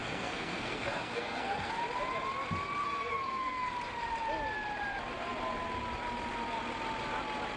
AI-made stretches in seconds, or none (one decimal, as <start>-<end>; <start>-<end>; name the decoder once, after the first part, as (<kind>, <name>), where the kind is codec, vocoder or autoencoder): 0.0-1.8 (codec, SNAC); 2.8-3.7